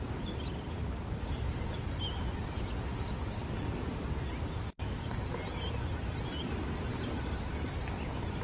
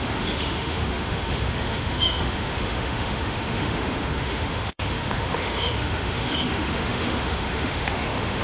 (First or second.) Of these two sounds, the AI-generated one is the second